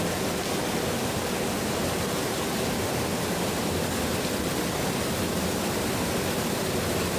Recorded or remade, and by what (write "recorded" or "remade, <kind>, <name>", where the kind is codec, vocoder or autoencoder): recorded